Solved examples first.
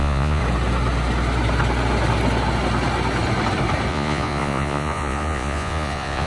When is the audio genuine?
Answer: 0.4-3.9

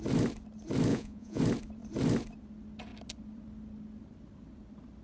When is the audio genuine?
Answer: 0.0-0.9; 1.4-5.0

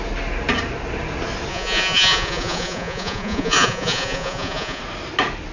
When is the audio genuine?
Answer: 0.0-1.5; 4.8-5.5

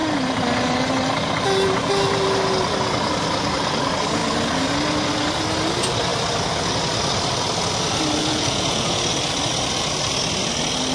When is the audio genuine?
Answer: 0.0-8.2; 9.0-10.9

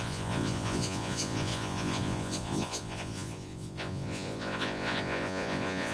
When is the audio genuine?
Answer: none

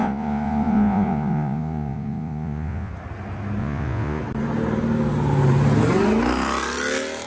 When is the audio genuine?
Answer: 2.9-3.6; 4.2-7.3

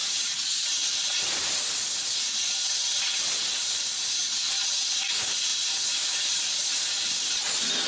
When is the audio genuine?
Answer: 0.0-7.9